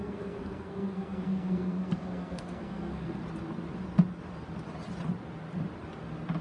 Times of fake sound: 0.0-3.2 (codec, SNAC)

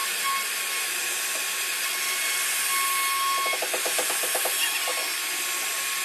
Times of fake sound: none

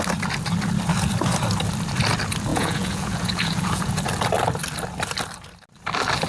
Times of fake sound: 2.5-3.9 (vocoder, Vocos)